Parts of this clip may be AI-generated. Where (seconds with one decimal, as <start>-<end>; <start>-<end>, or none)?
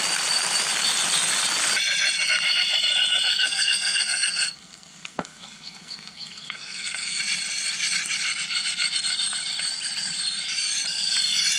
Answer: 3.3-7.2